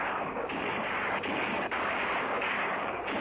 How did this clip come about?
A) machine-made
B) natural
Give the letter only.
A